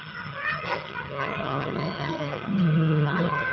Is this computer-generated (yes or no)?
yes